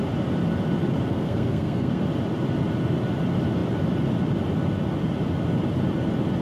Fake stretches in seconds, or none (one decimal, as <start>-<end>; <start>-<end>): 1.1-2.0